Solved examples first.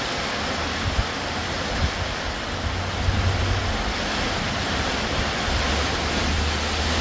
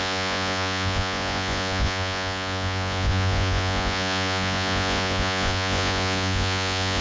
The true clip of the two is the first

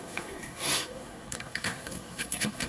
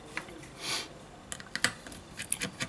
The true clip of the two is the second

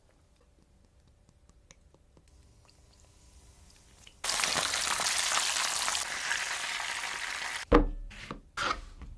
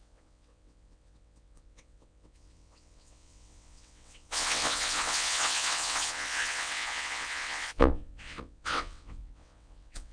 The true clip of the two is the first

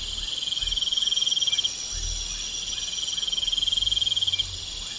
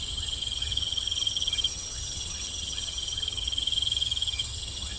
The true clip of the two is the first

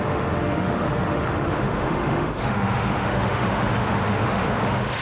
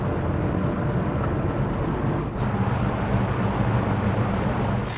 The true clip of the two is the second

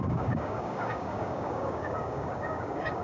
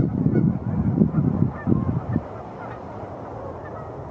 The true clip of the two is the second